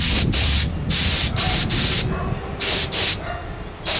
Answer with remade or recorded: recorded